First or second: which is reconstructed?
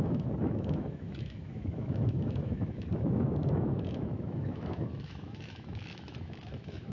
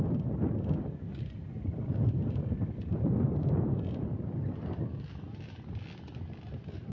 first